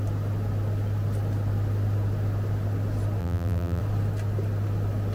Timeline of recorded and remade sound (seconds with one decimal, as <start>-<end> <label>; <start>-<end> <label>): 0.0-3.2 recorded; 3.2-3.8 remade; 3.8-5.1 recorded